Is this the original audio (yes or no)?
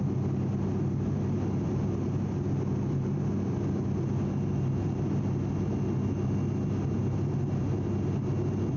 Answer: yes